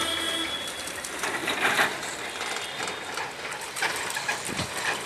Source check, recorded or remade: recorded